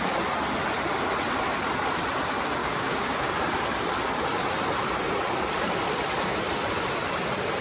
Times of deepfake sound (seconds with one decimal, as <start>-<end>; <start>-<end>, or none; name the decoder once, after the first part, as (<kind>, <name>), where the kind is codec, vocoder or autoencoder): 2.6-3.3 (codec, DAC)